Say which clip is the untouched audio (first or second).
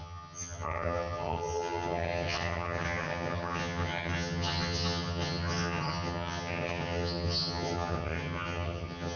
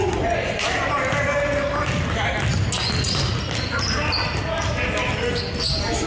second